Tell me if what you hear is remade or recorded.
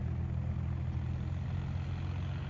recorded